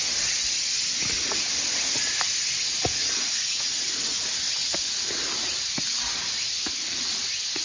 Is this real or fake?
real